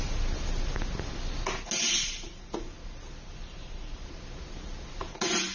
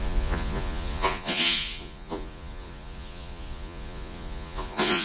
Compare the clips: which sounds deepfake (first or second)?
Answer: second